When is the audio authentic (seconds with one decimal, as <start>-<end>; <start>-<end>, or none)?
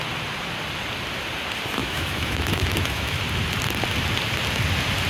0.0-1.8; 3.2-5.1